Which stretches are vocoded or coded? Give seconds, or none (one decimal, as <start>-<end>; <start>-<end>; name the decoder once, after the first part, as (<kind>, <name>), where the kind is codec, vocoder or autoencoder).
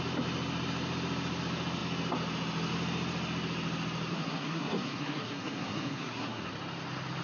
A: 4.1-6.5 (codec, SNAC)